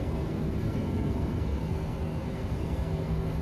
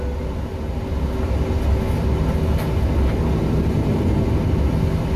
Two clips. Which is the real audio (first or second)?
second